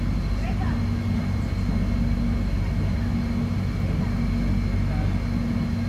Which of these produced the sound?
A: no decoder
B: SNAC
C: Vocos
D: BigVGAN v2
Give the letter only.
A